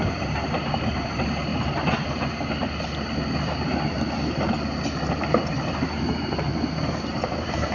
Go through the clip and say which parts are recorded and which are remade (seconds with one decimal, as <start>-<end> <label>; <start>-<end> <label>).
0.0-1.5 remade; 1.5-5.1 recorded; 5.1-6.5 remade; 6.5-7.1 recorded; 7.1-7.7 remade